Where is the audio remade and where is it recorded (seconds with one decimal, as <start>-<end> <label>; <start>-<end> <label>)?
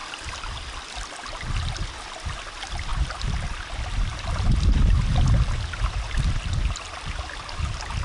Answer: 0.0-8.0 recorded